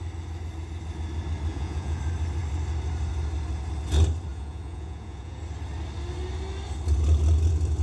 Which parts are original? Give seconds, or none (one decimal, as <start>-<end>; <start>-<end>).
0.0-1.5; 2.0-4.3; 5.4-7.8